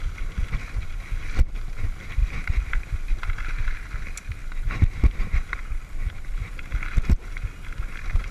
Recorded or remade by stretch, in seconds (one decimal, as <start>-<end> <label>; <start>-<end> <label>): 0.0-2.2 recorded; 2.2-3.3 remade; 3.3-4.4 recorded; 4.4-6.5 remade; 6.5-8.3 recorded